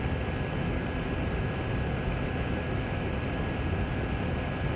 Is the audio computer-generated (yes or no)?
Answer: no